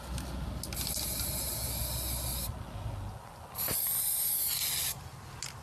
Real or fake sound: real